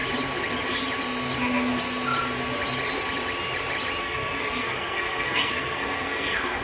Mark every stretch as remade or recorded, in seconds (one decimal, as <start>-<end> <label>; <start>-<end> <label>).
0.0-4.0 recorded; 4.0-6.6 remade